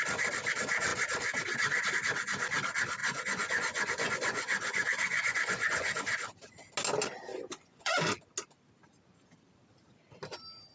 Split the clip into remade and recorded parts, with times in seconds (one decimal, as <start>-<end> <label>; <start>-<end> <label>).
0.0-3.0 recorded; 3.0-6.0 remade; 6.0-7.3 recorded; 7.3-8.0 remade; 8.0-10.7 recorded